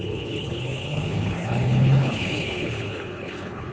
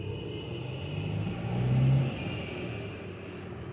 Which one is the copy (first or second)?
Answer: first